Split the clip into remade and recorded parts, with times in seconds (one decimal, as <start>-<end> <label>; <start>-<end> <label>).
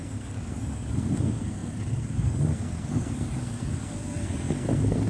0.0-5.1 remade